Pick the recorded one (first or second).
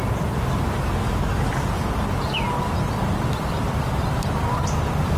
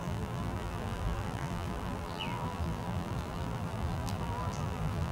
first